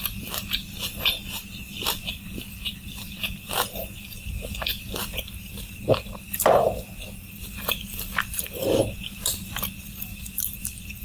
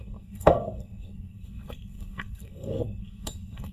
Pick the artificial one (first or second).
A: second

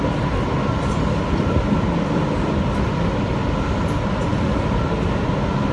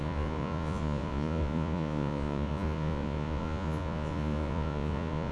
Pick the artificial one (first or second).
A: second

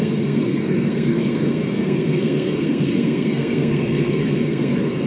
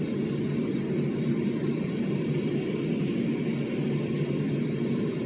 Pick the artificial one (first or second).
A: first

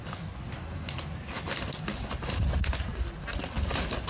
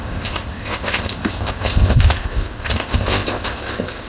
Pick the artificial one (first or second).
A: second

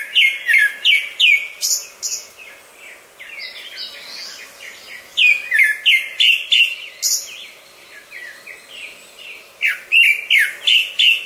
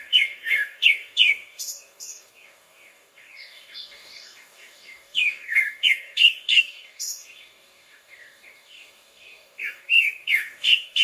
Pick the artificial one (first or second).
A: second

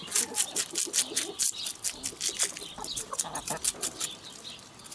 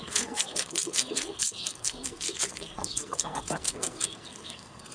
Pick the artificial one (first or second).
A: second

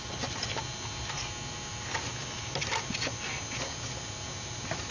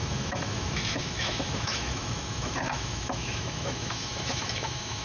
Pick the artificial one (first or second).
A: second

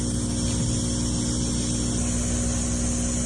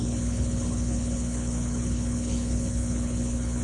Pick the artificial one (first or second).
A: second